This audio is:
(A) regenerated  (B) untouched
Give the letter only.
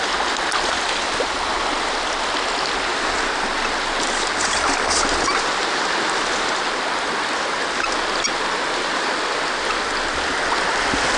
B